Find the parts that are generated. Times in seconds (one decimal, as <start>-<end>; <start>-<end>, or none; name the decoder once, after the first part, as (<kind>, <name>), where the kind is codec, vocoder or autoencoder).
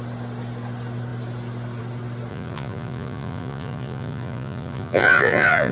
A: 2.3-5.7 (vocoder, Vocos)